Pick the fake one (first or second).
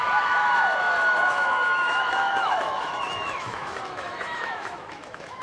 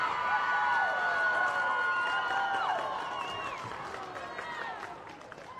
first